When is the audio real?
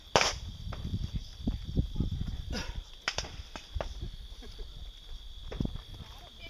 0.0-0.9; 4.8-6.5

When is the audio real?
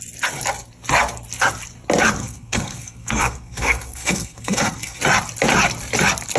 0.0-2.2; 5.0-6.4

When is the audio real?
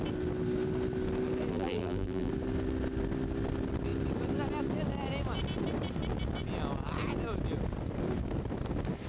0.0-1.5; 2.3-9.1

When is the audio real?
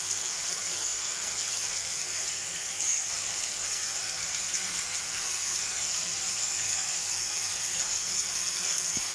none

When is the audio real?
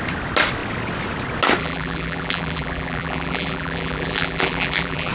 0.0-1.6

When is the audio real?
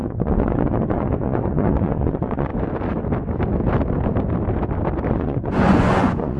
2.5-5.1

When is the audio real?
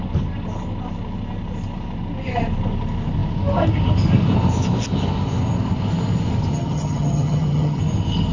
0.0-6.5; 7.8-8.3